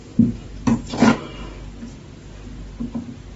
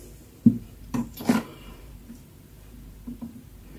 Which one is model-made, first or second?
second